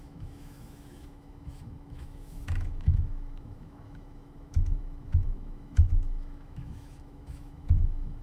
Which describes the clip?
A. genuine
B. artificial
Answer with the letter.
B